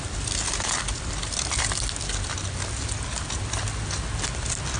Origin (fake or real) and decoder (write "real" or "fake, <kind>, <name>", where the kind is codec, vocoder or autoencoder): real